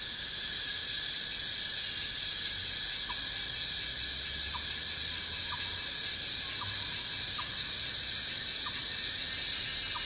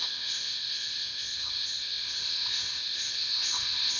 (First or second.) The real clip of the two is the first